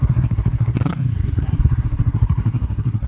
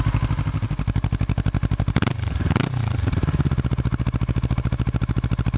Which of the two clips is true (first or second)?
second